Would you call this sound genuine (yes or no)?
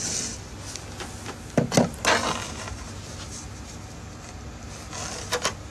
yes